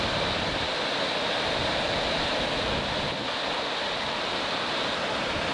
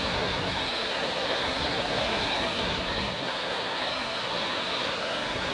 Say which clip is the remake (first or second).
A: second